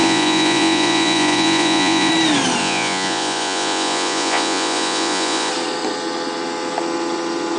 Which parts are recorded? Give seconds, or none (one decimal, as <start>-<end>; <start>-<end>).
2.1-2.6; 5.5-7.6